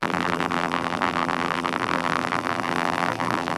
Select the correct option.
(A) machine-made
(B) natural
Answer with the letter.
A